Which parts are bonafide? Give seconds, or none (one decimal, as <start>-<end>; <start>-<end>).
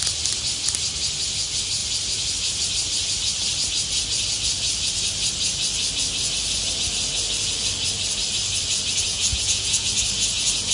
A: 0.0-9.1; 9.9-10.7